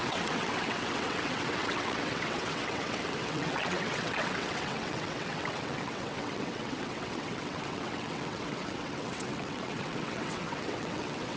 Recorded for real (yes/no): no